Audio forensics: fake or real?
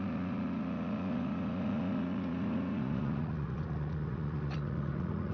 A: fake